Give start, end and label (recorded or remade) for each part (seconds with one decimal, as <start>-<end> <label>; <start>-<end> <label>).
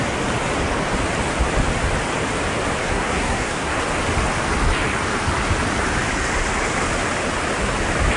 0.0-2.8 recorded; 2.8-3.8 remade; 3.8-8.2 recorded